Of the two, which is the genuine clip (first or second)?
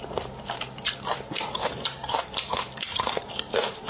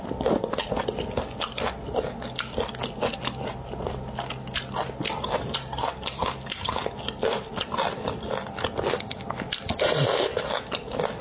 second